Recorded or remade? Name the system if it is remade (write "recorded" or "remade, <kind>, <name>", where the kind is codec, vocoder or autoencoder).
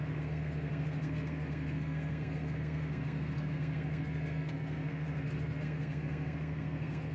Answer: remade, codec, SNAC